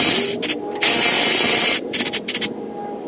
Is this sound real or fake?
real